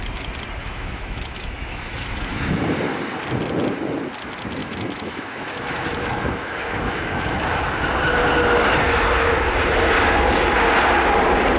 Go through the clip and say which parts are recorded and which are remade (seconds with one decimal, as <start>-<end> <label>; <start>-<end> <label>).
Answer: 0.0-0.6 recorded; 0.6-2.6 remade; 2.6-4.6 recorded; 4.6-7.7 remade; 7.7-11.6 recorded